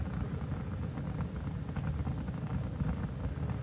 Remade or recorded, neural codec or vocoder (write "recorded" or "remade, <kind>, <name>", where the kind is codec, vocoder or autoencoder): recorded